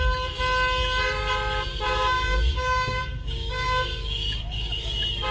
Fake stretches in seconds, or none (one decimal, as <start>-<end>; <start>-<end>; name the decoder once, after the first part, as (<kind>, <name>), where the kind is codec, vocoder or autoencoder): 1.7-5.3 (codec, DAC)